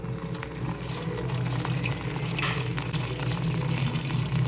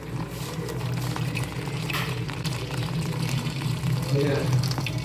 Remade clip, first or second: second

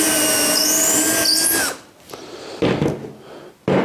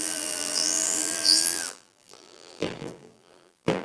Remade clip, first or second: second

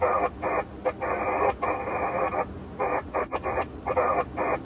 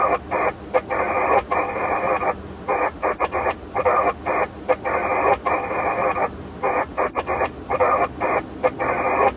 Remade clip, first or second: second